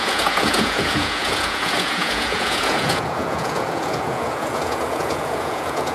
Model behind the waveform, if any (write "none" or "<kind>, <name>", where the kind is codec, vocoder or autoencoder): vocoder, Vocos